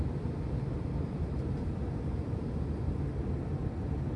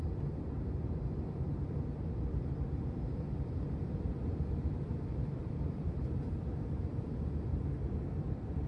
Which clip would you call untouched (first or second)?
first